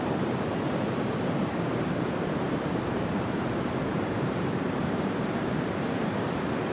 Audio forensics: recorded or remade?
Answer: remade